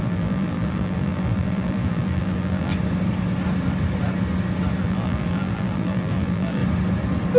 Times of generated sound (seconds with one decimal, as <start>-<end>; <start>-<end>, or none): 0.0-2.7; 4.8-6.6